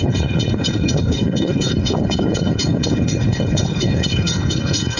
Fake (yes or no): yes